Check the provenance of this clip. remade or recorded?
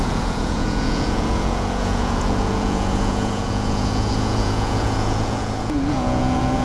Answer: remade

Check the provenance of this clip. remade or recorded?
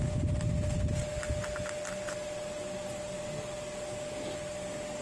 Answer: recorded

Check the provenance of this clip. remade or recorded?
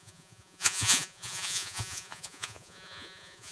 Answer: remade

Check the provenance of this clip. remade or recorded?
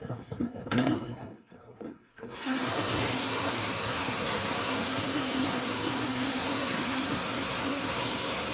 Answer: remade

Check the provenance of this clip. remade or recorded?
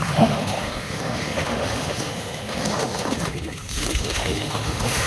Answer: remade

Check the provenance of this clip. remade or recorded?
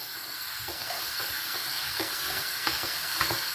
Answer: remade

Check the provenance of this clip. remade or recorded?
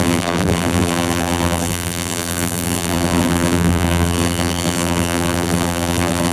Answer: remade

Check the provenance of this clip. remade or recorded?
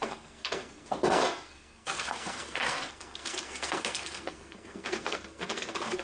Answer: remade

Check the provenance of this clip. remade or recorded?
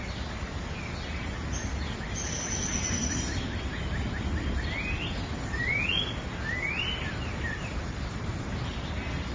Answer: recorded